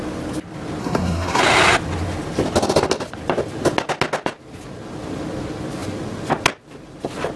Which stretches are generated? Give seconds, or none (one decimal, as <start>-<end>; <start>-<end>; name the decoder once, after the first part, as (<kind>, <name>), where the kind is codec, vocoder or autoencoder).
0.8-1.4 (codec, SNAC)